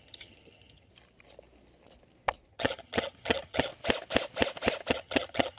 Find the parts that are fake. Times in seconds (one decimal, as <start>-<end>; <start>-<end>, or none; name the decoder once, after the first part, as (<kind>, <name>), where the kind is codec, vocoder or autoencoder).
0.0-0.9 (vocoder, HiFi-GAN); 2.5-3.7; 4.9-5.6